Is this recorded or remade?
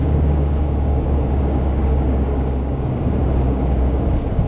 remade